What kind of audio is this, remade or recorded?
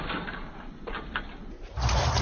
recorded